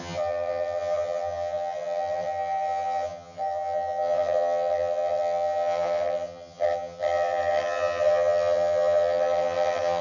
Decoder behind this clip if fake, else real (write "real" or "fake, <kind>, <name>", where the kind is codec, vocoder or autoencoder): fake, vocoder, HiFi-GAN